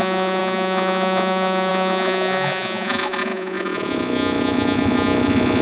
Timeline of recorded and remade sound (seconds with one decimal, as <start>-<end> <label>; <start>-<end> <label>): 0.0-5.6 remade